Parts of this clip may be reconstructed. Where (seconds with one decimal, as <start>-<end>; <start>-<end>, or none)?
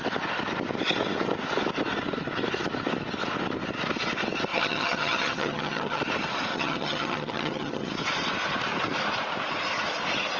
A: 4.5-6.0; 6.5-7.9